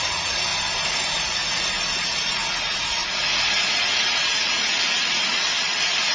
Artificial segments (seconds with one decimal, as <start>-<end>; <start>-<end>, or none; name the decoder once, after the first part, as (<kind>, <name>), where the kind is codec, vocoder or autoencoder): 0.0-0.5 (vocoder, Vocos); 1.2-3.0; 3.7-6.1